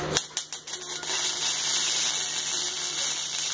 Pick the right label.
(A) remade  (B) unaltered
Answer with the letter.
B